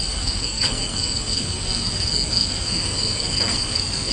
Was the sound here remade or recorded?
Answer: remade